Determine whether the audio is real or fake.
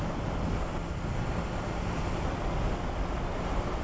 real